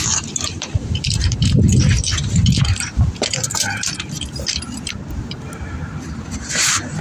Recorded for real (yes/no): no